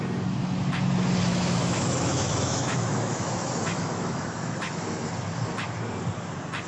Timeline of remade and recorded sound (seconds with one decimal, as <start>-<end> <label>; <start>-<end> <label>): 0.0-1.3 recorded; 1.3-5.1 remade; 5.1-6.7 recorded